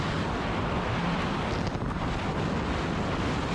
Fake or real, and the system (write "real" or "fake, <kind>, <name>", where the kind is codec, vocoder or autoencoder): real